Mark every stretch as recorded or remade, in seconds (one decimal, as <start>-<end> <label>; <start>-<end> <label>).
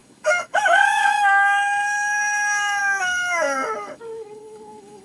0.0-5.0 remade